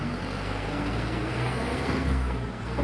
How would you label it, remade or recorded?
remade